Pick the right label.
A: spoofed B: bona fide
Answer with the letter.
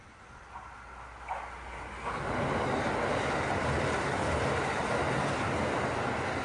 B